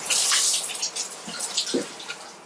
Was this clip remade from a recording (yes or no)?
no